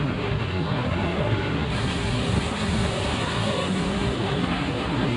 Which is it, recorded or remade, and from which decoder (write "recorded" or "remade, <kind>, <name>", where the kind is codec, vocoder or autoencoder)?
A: remade, codec, SNAC